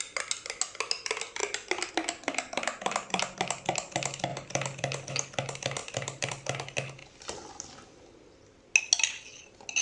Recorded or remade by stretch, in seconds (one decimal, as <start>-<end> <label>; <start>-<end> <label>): 0.0-4.3 recorded; 4.3-5.1 remade; 5.1-5.8 recorded; 5.8-6.3 remade; 6.3-9.8 recorded